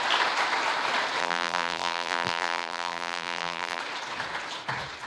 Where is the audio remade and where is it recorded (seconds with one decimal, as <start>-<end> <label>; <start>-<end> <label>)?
0.0-1.2 recorded; 1.2-3.8 remade; 3.8-5.1 recorded